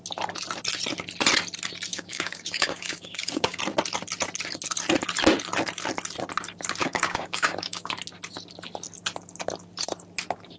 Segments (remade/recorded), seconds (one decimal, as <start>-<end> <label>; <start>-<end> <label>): 0.0-1.9 recorded; 1.9-3.6 remade; 3.6-6.8 recorded; 6.8-7.9 remade; 7.9-10.6 recorded